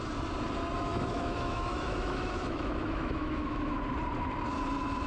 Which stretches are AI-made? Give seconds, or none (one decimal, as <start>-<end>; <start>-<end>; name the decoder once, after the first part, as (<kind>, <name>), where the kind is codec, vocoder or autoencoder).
0.9-3.8 (autoencoder, DAC-VAE)